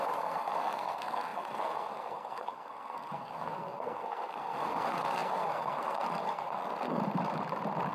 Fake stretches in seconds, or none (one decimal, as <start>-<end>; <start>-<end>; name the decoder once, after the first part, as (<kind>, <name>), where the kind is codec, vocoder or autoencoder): 0.0-7.0 (codec, SNAC)